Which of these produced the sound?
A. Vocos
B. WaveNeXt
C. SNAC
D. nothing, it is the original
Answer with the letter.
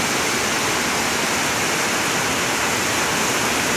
D